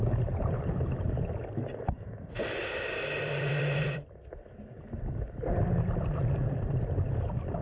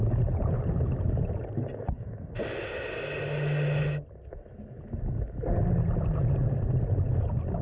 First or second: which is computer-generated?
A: first